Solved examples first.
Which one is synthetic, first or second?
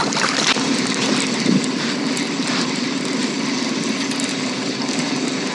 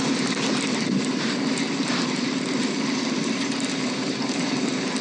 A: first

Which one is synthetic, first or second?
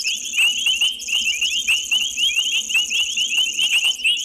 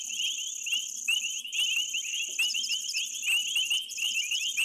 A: second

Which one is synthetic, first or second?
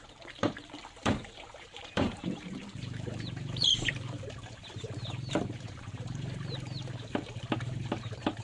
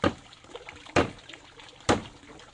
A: first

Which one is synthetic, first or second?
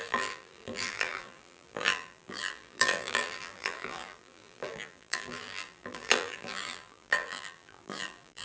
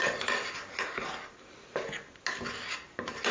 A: first